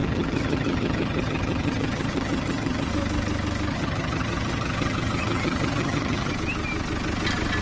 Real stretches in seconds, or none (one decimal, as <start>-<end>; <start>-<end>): 2.9-3.7; 6.3-7.6